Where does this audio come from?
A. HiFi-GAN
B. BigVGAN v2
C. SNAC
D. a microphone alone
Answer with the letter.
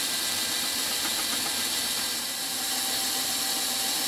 D